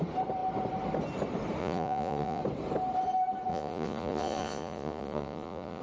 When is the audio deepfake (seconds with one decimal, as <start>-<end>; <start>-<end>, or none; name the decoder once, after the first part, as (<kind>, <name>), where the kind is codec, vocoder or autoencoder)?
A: 1.6-2.4 (vocoder, Vocos); 3.5-5.8